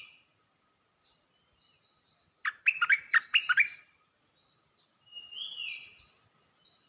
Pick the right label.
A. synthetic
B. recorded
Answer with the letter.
B